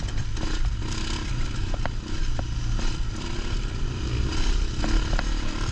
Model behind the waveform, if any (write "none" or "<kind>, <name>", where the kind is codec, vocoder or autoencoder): none